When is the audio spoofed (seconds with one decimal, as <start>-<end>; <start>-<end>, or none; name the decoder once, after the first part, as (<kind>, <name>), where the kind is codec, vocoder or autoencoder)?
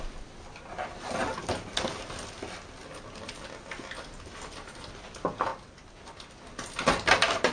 none